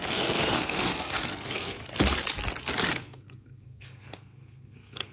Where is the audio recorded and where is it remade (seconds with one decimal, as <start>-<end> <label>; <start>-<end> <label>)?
0.0-1.8 remade; 1.8-2.9 recorded; 2.9-5.1 remade